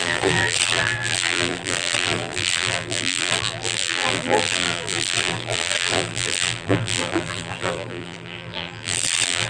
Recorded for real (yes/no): no